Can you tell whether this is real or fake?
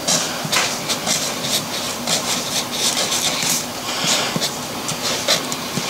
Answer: real